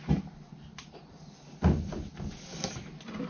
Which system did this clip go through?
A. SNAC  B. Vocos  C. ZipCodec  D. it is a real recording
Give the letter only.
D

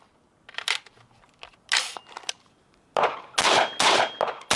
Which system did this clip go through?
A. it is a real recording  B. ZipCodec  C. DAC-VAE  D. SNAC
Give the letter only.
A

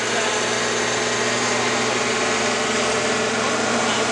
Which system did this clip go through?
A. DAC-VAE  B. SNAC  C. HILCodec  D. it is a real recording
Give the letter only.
D